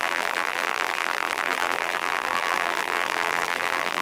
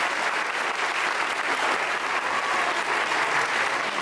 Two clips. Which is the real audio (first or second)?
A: second